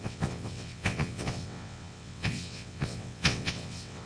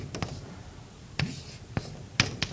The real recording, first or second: second